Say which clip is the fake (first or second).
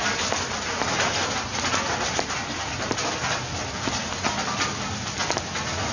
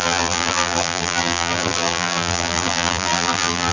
second